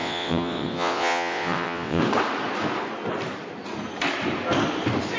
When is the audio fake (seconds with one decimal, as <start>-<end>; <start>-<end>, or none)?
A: 0.0-2.0